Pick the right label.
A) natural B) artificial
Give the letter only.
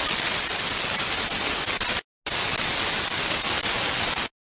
A